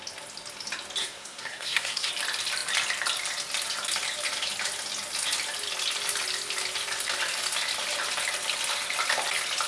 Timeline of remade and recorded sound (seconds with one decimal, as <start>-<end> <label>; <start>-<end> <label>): 0.0-1.0 recorded; 1.0-2.1 remade; 2.1-9.7 recorded